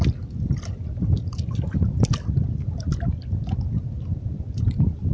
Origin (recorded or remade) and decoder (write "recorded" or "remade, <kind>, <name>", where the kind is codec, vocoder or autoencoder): recorded